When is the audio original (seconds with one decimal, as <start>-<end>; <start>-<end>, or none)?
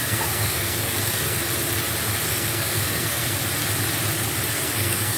1.4-2.3; 3.4-4.5